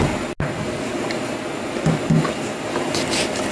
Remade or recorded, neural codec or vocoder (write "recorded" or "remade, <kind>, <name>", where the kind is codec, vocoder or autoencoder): recorded